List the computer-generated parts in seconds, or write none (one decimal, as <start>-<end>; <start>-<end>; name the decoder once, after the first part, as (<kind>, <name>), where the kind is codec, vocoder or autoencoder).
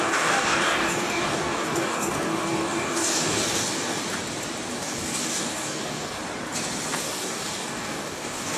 0.0-4.0 (codec, DAC); 4.7-6.2; 7.0-8.6